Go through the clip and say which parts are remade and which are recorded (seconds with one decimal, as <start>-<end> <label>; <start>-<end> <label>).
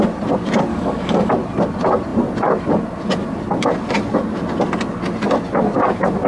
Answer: 0.0-0.7 recorded; 0.7-1.3 remade; 1.3-6.3 recorded